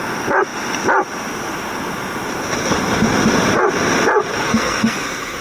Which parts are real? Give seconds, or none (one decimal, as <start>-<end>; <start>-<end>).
0.0-4.3